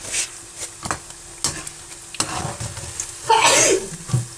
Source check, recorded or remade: recorded